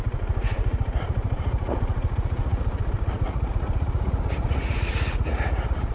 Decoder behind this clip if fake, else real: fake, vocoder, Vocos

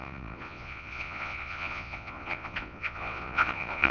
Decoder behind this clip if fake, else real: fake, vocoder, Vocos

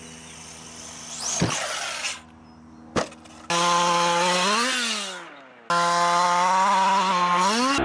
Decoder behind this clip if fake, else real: real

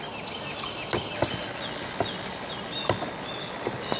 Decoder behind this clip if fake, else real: real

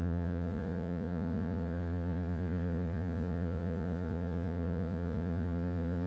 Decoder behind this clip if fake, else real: fake, vocoder, Vocos